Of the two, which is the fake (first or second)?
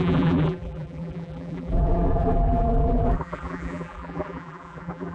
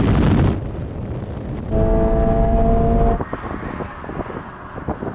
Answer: first